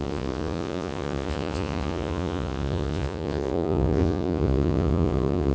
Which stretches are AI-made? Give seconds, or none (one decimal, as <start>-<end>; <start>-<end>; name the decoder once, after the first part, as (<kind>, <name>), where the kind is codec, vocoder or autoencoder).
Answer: 0.0-5.5 (vocoder, Vocos)